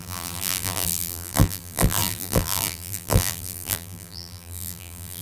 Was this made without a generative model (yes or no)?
no